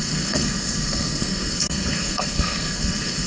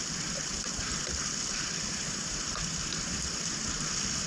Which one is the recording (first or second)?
second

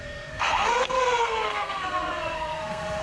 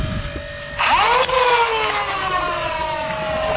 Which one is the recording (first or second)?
second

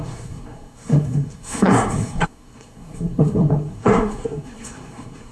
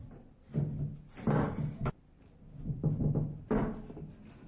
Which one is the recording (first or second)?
second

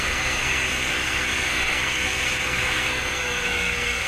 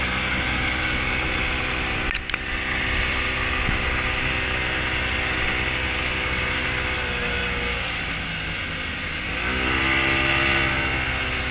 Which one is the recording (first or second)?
second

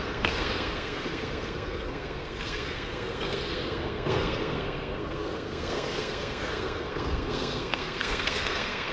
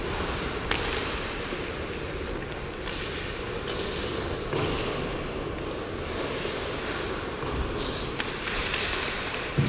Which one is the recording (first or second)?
second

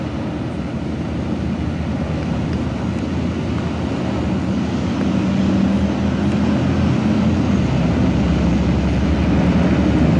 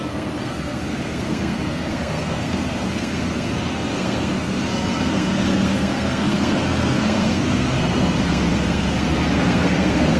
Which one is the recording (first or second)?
first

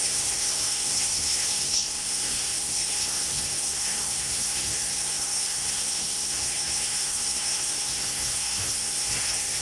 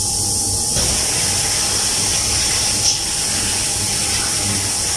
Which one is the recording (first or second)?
second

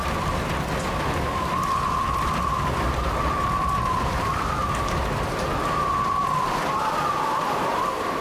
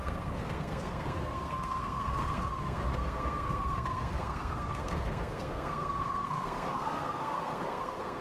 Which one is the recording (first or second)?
first